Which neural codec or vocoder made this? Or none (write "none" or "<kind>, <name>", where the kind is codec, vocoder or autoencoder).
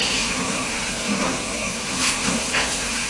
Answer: codec, SNAC